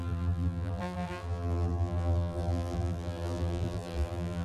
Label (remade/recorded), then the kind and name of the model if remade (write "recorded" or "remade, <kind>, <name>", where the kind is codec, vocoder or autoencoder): remade, vocoder, BigVGAN v2